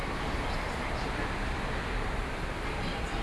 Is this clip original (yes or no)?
yes